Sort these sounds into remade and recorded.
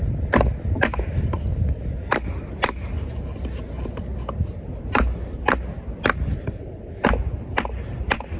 recorded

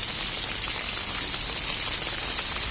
recorded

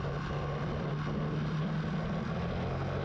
recorded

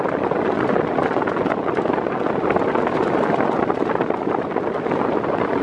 recorded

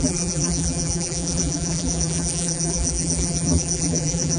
remade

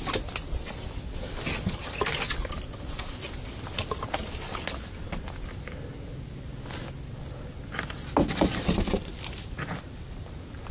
recorded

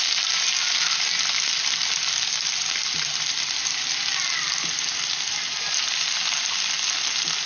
recorded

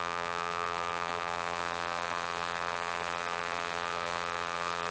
remade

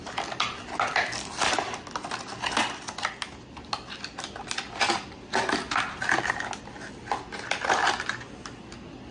recorded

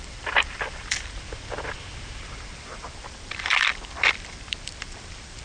remade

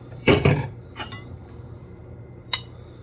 remade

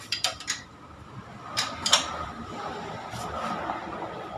remade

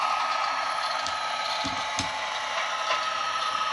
remade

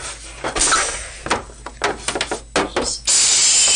recorded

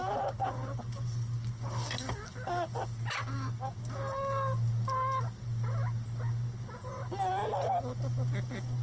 recorded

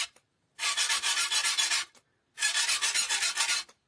remade